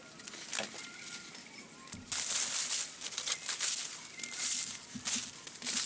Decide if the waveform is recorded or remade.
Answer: recorded